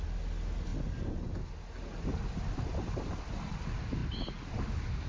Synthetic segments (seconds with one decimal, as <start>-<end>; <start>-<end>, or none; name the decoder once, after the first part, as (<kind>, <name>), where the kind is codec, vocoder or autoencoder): none